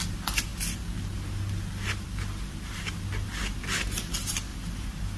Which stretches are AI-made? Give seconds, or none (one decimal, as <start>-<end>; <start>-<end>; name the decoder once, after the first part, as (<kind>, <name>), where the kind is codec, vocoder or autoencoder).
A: none

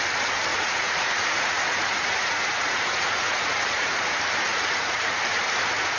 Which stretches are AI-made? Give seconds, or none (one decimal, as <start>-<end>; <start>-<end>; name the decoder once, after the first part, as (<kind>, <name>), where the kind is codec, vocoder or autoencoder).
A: 0.5-4.1 (vocoder, Vocos); 4.5-5.2

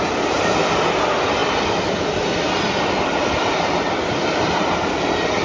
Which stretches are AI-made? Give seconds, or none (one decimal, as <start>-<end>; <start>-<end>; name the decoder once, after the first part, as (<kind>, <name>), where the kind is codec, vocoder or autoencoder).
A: none

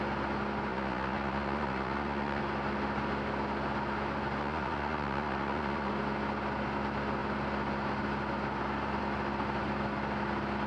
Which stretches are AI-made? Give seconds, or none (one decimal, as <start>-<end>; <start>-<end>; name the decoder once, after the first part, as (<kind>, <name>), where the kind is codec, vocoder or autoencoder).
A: 0.7-2.4 (vocoder, Vocos); 4.4-5.9

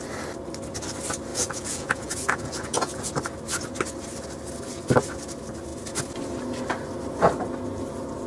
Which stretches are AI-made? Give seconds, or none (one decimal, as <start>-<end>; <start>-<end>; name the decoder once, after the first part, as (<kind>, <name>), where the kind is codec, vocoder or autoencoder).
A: 1.3-3.1 (vocoder, Vocos)

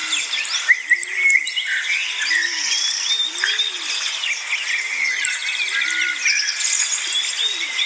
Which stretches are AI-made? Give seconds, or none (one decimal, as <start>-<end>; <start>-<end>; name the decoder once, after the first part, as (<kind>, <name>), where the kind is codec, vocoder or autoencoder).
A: none

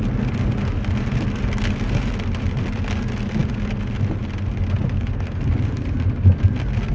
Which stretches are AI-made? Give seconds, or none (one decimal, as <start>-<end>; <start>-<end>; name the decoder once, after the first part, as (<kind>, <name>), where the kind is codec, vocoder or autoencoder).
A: none

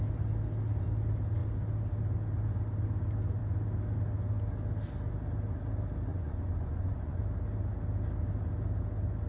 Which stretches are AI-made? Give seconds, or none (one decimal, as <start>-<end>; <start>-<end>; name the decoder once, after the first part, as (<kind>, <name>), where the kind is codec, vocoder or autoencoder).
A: 6.1-7.2 (vocoder, Vocos)